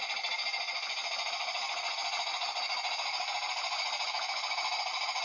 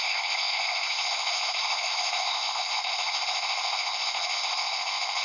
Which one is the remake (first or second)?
second